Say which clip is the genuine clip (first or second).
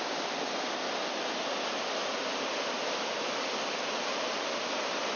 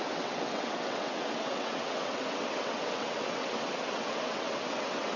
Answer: first